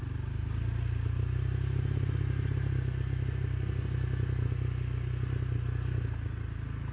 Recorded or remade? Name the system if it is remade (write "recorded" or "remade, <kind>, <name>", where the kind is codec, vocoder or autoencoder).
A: recorded